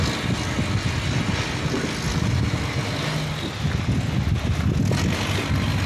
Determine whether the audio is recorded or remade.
recorded